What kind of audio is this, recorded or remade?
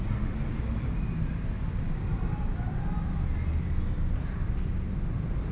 recorded